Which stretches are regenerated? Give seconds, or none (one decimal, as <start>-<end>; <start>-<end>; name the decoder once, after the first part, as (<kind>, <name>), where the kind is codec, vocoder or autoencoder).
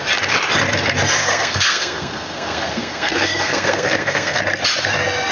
1.2-4.4 (codec, SNAC)